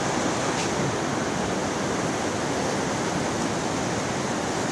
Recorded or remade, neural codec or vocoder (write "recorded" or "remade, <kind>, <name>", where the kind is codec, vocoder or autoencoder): recorded